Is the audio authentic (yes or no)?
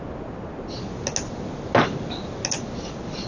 yes